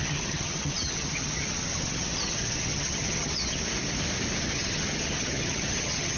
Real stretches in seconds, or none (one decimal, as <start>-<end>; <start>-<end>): 3.6-4.4